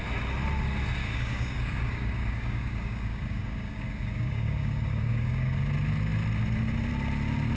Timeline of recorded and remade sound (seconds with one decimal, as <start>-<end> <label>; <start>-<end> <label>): 0.0-1.0 recorded; 1.0-5.6 remade; 5.6-7.6 recorded